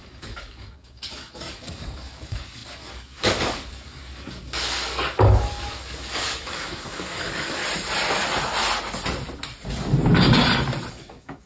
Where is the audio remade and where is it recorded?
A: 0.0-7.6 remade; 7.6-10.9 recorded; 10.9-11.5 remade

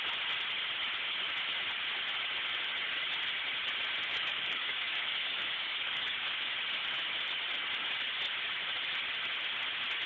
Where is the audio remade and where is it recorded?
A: 0.0-4.1 recorded; 4.1-6.5 remade; 6.5-10.1 recorded

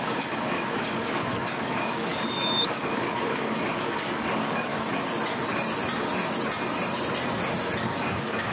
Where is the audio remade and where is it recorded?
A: 0.0-4.7 remade; 4.7-7.8 recorded; 7.8-8.5 remade